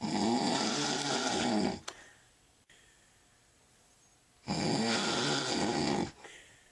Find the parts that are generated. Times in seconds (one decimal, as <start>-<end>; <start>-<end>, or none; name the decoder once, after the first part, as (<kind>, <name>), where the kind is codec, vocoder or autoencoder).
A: none